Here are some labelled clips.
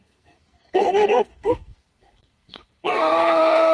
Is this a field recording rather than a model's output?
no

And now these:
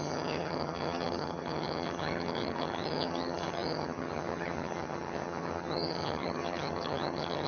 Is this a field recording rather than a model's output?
no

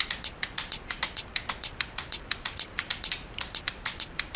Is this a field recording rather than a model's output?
no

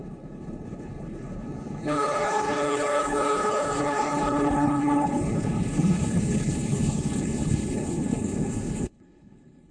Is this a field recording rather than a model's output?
no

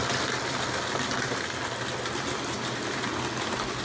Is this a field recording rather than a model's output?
yes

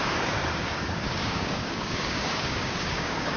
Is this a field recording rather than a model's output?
no